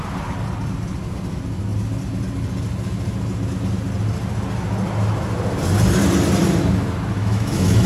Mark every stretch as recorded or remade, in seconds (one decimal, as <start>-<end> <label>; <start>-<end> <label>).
0.0-7.2 recorded; 7.2-7.9 remade